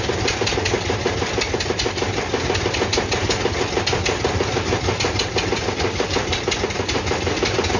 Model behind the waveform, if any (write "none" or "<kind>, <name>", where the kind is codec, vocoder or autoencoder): none